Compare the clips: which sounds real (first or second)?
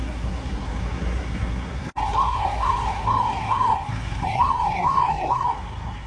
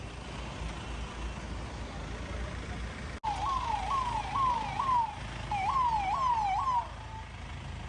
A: second